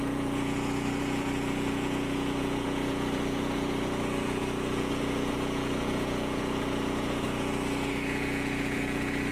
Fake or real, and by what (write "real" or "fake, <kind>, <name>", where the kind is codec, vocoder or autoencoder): fake, vocoder, Vocos